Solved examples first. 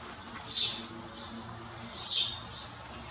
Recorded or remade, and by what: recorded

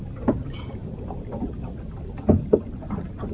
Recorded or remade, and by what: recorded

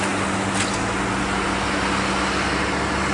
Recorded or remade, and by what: recorded